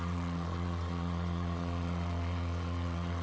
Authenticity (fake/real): fake